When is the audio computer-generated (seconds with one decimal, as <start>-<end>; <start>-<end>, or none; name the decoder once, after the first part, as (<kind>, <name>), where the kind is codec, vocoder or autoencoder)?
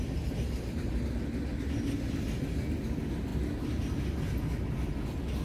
none